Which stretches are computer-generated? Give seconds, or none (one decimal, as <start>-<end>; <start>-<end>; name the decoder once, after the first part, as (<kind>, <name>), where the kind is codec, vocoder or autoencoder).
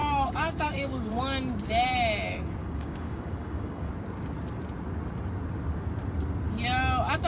0.0-1.1 (codec, DAC); 2.6-3.9